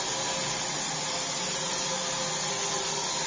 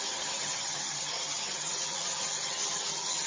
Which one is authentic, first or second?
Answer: first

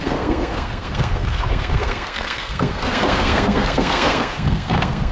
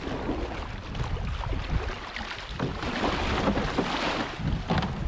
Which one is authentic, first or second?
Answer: second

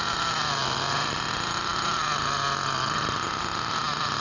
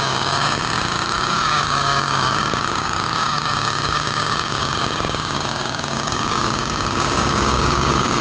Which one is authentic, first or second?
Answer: first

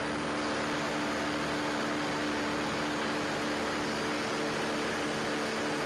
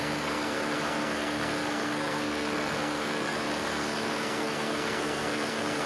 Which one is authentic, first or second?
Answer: first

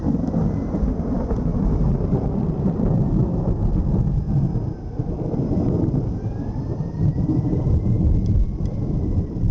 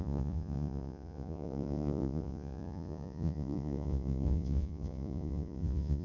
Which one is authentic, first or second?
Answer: first